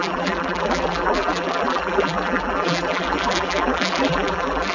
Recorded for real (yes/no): no